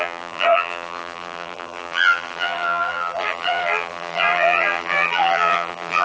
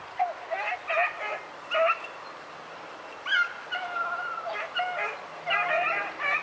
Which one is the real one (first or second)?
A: second